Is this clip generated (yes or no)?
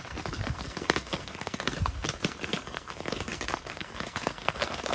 yes